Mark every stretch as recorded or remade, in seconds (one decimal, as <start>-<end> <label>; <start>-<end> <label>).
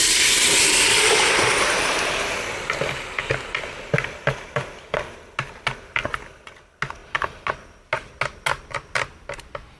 0.0-9.8 recorded